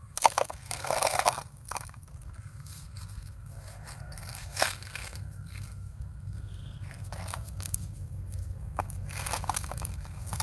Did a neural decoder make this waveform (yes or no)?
yes